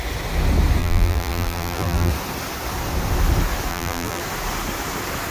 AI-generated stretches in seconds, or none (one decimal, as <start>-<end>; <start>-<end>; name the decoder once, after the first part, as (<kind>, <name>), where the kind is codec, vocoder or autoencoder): 0.8-2.1 (vocoder, BigVGAN v2); 3.7-4.2